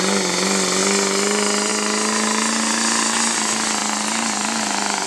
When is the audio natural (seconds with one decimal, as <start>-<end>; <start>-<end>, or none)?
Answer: 0.0-3.8